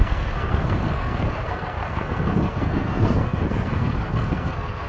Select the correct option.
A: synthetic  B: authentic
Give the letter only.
A